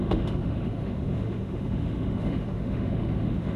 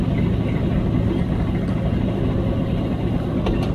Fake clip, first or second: first